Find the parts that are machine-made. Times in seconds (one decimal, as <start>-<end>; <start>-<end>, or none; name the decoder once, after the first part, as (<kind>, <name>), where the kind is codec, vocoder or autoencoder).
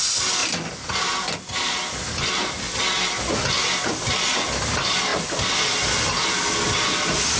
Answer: none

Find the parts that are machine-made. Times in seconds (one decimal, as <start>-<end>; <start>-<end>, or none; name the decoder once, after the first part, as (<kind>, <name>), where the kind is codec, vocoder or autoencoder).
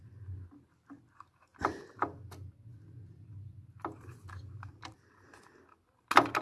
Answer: none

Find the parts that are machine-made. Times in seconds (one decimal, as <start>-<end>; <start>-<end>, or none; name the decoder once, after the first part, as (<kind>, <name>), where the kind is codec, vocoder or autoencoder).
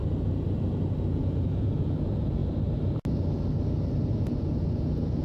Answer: 1.1-2.4 (vocoder, Vocos); 4.2-5.2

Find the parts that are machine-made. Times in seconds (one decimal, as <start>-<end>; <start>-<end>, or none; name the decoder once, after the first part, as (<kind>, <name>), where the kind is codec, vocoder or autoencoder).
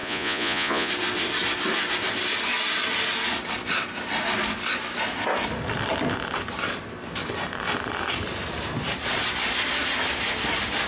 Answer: 0.0-0.9 (vocoder, Vocos)